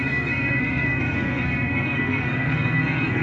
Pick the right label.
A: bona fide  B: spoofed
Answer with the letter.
B